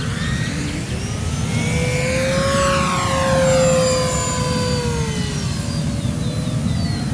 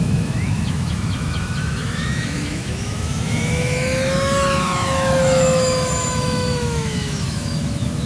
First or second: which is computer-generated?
second